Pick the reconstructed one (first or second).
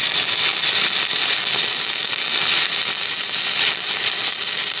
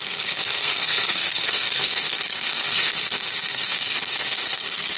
second